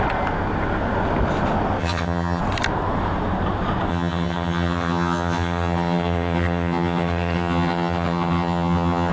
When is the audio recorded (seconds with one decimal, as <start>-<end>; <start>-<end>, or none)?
0.0-1.8; 2.4-3.9